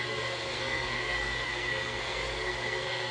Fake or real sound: fake